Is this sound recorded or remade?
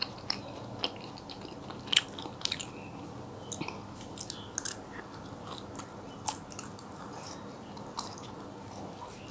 recorded